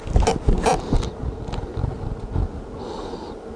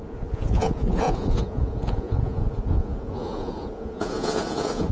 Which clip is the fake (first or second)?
second